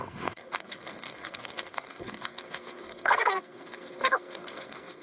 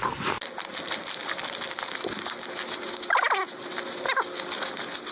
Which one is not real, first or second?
first